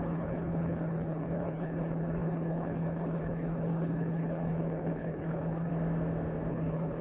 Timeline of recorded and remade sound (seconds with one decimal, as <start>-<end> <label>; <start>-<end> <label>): 0.0-5.7 remade; 5.7-6.5 recorded; 6.5-7.0 remade